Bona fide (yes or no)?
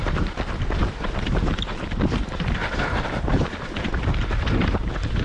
no